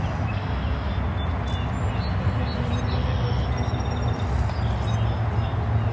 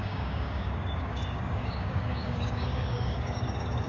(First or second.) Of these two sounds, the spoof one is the second